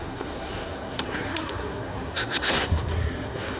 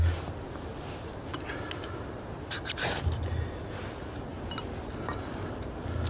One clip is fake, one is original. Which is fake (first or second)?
first